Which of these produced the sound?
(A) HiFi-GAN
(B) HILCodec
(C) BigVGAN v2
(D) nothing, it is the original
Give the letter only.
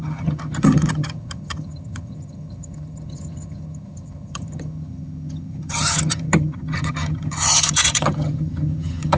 A